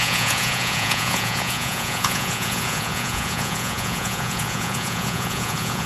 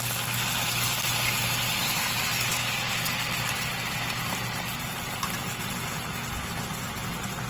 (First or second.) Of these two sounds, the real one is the second